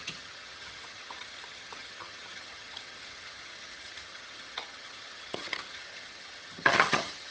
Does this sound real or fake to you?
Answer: fake